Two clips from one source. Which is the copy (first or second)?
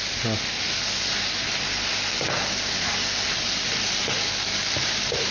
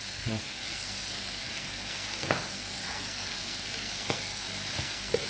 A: second